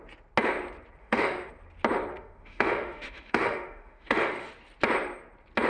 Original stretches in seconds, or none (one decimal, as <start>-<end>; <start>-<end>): 0.0-1.0; 1.5-2.1; 4.5-5.7